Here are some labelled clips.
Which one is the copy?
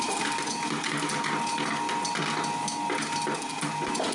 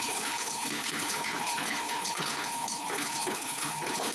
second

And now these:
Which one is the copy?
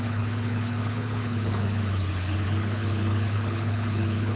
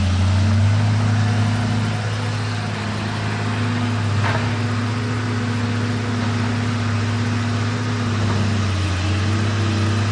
first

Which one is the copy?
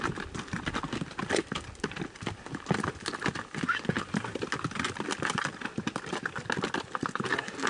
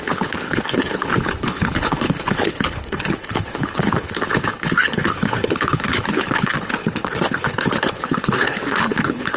second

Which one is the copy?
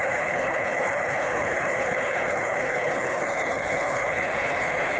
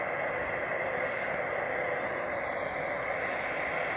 first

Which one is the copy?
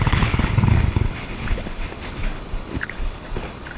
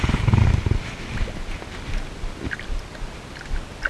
first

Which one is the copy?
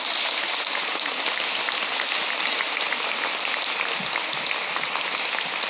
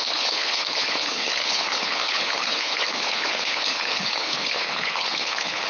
second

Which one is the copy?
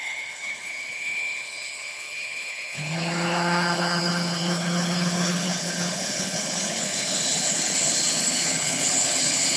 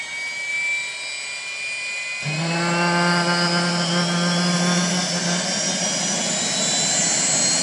first